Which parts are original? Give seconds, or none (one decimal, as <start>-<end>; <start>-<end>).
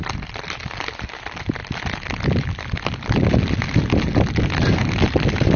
0.0-5.6